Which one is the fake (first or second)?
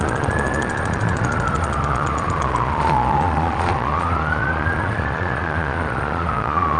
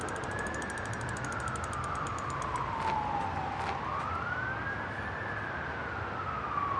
first